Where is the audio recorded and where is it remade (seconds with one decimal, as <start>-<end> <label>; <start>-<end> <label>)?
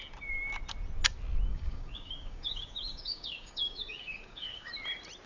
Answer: 0.0-1.5 recorded; 1.5-4.7 remade; 4.7-5.3 recorded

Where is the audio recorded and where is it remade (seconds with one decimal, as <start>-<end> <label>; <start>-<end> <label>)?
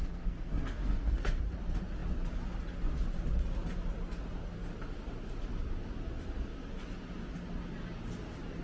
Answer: 0.0-1.4 remade; 1.4-8.6 recorded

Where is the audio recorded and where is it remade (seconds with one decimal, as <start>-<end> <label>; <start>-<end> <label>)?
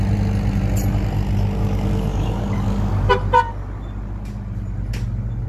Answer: 0.0-1.6 recorded; 1.6-3.1 remade; 3.1-5.5 recorded